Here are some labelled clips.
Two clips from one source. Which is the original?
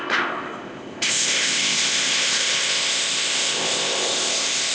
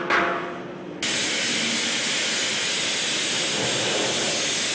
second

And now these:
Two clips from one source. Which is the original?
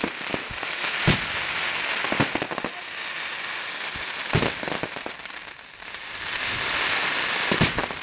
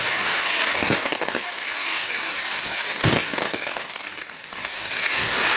first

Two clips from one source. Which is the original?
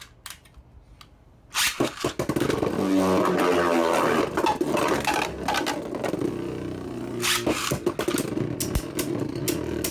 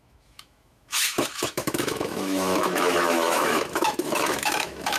first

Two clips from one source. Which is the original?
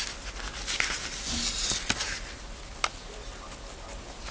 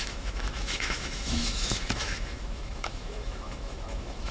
first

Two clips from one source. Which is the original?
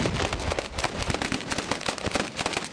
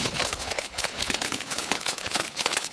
first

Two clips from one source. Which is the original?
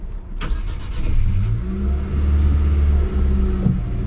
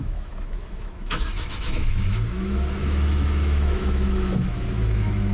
first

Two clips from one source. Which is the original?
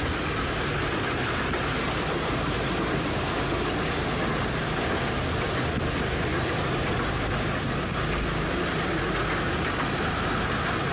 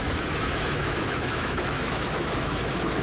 first